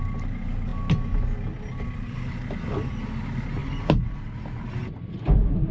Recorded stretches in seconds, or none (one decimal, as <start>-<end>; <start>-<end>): 0.0-5.7